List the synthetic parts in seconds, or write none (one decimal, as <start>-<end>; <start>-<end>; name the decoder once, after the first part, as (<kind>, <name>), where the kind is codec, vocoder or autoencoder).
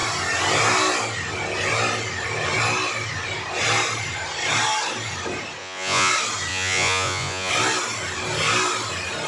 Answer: 5.6-6.1 (vocoder, Vocos); 6.5-7.5